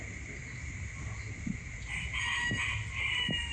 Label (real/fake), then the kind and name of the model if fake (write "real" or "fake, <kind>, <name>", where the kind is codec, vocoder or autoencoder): real